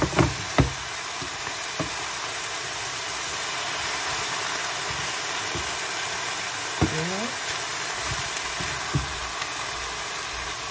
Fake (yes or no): no